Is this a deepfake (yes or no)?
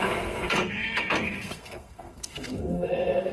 yes